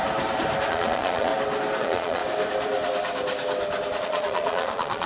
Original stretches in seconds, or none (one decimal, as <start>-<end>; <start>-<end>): 0.0-0.7; 1.3-1.8; 2.2-4.0